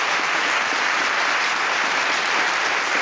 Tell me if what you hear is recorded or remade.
recorded